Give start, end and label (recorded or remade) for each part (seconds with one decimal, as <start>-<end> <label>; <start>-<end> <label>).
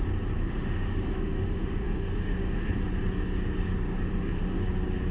0.0-0.4 recorded; 0.4-2.7 remade; 2.7-3.9 recorded; 3.9-4.6 remade; 4.6-5.1 recorded